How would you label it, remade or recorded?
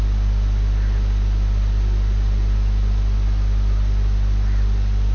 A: recorded